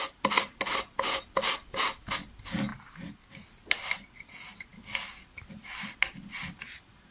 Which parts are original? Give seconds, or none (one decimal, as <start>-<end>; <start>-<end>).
0.0-7.1